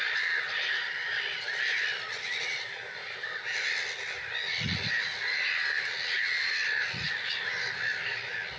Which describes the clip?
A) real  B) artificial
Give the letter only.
A